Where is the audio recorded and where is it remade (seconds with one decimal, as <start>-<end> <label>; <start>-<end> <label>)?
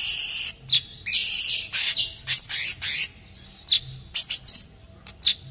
0.0-5.5 recorded